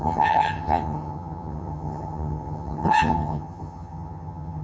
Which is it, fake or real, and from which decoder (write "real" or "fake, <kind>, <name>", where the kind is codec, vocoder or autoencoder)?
fake, vocoder, HiFi-GAN